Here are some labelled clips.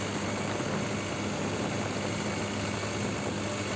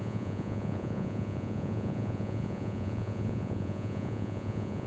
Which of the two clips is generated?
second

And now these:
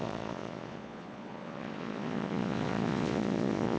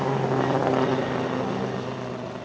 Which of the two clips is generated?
first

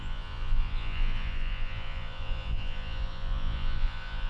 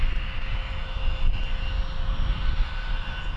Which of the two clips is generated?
first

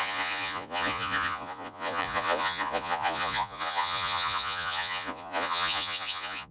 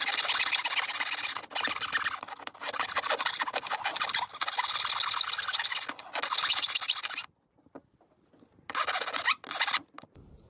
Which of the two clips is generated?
first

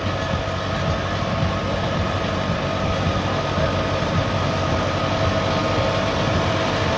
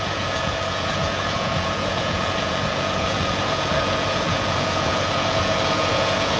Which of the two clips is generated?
second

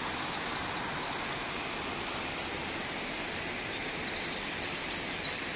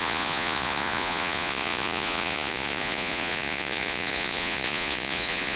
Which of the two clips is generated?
second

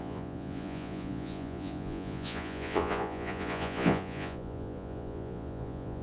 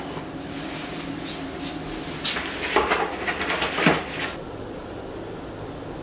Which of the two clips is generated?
first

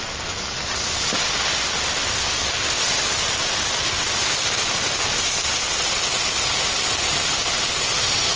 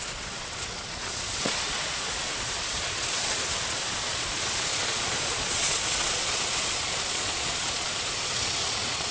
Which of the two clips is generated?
second